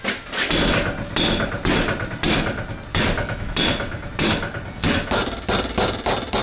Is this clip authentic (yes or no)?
yes